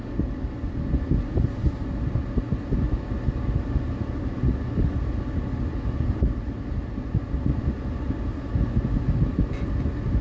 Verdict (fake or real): real